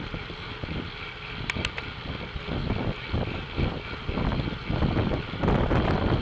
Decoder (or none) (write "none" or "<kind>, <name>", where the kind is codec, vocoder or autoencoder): none